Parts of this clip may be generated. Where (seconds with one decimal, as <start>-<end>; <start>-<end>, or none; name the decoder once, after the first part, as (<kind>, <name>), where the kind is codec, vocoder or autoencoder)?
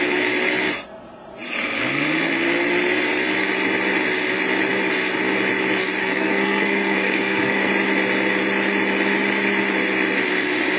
6.0-7.7 (codec, SNAC)